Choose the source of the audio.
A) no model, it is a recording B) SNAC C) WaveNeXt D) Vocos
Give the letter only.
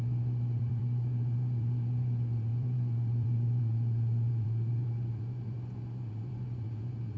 D